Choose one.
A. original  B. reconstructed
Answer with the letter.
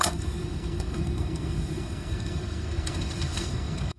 B